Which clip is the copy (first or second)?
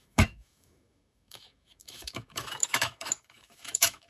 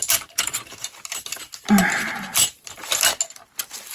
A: first